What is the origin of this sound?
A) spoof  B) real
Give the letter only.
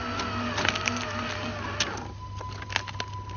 B